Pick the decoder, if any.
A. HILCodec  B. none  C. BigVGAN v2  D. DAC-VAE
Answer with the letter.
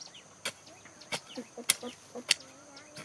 B